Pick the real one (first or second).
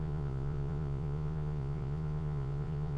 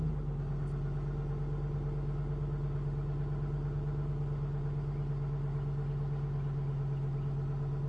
second